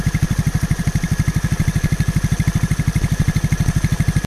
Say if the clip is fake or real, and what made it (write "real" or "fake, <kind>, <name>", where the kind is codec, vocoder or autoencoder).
fake, vocoder, BigVGAN v2